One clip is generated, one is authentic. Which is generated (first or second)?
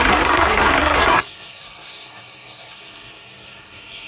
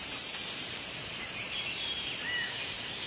first